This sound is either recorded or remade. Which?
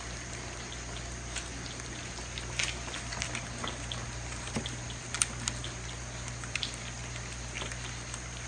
recorded